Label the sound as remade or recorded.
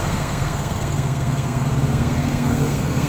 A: remade